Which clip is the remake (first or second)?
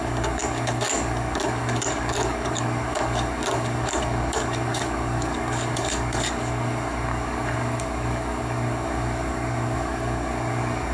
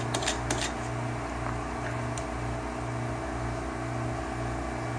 first